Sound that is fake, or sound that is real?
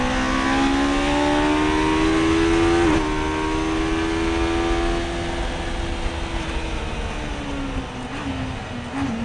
real